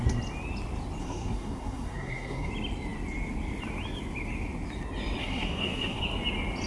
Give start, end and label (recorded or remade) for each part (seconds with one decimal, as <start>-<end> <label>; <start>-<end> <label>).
0.0-1.0 recorded; 1.0-2.5 remade; 2.5-5.2 recorded; 5.2-6.0 remade; 6.0-6.7 recorded